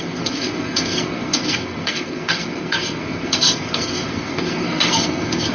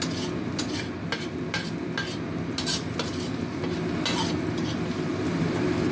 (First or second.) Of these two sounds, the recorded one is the second